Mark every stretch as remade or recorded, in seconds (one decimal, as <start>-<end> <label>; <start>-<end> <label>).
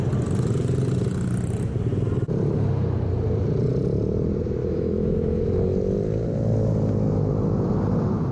0.0-4.6 recorded; 4.6-5.4 remade; 5.4-8.3 recorded